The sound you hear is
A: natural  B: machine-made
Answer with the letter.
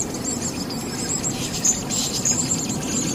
A